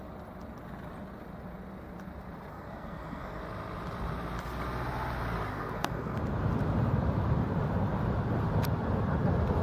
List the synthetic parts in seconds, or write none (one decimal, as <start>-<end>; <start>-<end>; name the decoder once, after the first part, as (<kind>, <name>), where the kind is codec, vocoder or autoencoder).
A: 2.5-3.4 (codec, SNAC); 5.5-6.2